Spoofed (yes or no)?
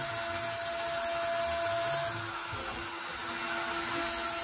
no